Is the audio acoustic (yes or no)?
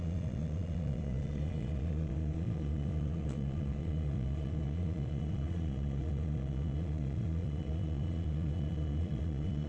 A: no